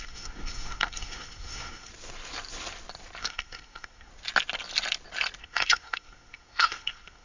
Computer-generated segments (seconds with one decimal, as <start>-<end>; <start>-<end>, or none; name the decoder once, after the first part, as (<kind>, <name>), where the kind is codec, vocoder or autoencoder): 0.0-1.9 (codec, SNAC); 3.2-4.1; 5.4-7.2